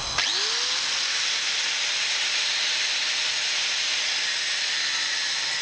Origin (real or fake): real